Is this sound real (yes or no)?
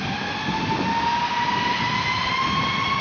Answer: yes